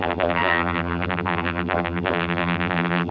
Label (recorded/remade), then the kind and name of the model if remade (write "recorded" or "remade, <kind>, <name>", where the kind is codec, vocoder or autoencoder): remade, vocoder, BigVGAN v2